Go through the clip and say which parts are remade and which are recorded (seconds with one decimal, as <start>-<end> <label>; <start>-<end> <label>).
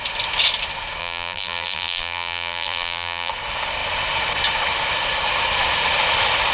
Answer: 0.0-1.0 recorded; 1.0-3.3 remade; 3.3-6.5 recorded